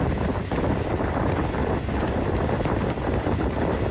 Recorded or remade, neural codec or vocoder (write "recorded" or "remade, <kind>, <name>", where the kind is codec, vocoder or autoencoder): recorded